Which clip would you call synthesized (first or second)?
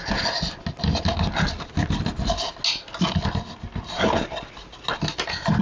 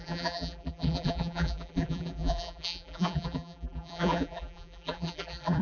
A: second